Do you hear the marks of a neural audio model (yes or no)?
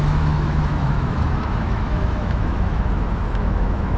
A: yes